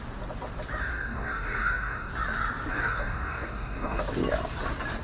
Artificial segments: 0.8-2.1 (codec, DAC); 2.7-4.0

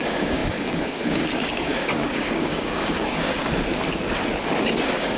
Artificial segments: 0.0-3.4 (codec, DAC); 4.8-5.2

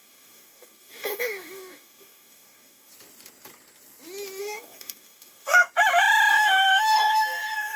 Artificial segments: 0.0-2.9 (codec, DAC); 4.4-5.6; 6.3-7.8

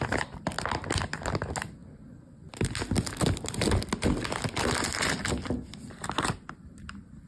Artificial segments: none